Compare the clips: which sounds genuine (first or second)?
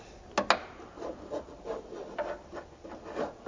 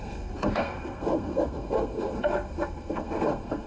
first